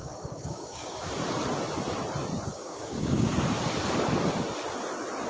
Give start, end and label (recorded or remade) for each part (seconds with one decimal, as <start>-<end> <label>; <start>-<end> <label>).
0.0-1.1 remade; 1.1-2.5 recorded; 2.5-3.3 remade; 3.3-5.3 recorded